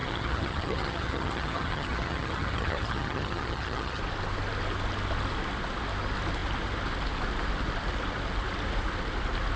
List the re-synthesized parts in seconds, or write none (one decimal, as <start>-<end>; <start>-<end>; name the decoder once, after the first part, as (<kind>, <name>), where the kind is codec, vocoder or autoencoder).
0.0-4.0 (vocoder, HiFi-GAN)